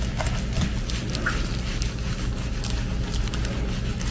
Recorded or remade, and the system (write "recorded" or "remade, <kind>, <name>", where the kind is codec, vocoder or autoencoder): recorded